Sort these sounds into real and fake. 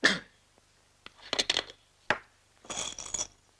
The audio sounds real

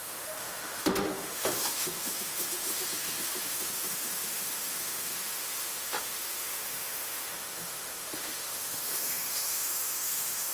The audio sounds fake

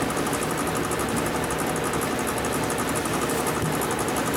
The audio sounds real